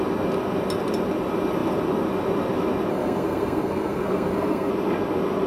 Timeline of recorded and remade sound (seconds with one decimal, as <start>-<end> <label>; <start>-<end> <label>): 0.0-2.9 recorded; 2.9-4.7 remade; 4.7-5.5 recorded